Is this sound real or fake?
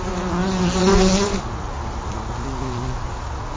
real